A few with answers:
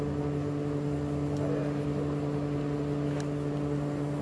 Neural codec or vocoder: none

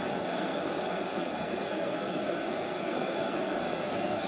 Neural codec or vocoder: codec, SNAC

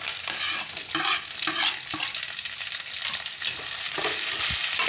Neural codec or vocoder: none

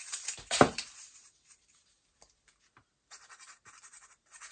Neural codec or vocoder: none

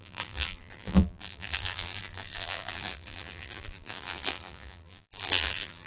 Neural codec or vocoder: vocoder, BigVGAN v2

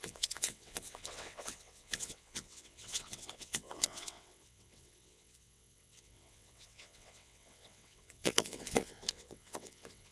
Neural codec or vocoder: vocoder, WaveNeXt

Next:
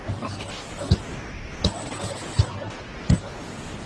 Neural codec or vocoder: none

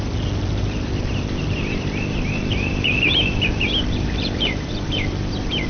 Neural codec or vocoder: vocoder, BigVGAN v2